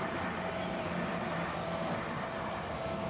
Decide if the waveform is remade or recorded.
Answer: recorded